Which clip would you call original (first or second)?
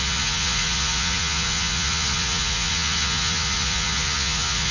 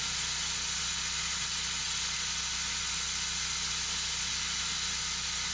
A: second